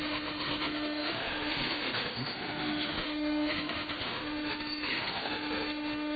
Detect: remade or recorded remade